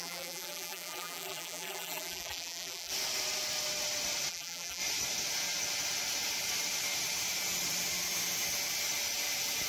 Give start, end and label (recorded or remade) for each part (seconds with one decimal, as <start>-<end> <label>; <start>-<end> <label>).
0.0-2.9 remade; 2.9-4.3 recorded; 4.3-4.8 remade; 4.8-9.7 recorded